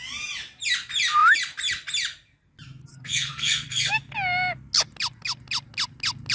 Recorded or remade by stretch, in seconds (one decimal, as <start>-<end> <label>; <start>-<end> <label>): 0.0-2.9 recorded; 2.9-3.9 remade; 3.9-6.3 recorded